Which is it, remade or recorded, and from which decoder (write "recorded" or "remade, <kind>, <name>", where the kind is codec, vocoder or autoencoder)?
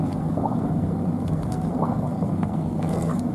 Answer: remade, codec, SNAC